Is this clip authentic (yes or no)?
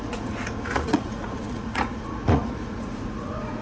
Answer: no